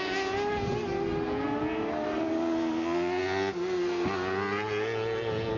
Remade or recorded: recorded